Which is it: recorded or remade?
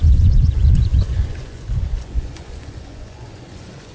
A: remade